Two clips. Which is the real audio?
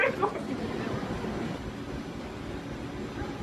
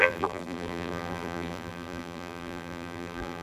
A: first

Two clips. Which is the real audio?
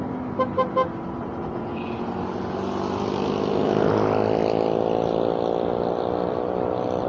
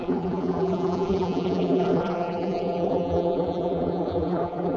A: first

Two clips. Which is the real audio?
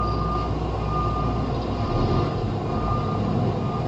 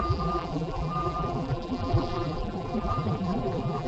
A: first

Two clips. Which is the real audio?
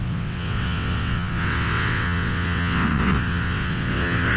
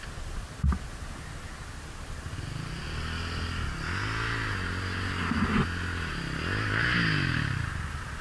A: second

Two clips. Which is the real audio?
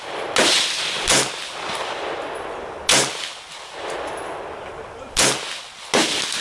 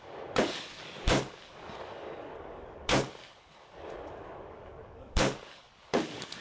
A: first